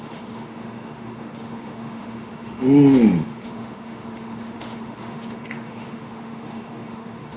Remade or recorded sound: remade